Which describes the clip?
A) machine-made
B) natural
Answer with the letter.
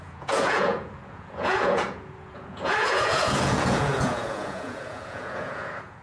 A